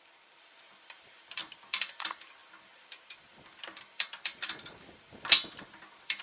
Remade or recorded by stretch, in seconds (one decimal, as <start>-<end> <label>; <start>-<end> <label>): 0.0-6.2 remade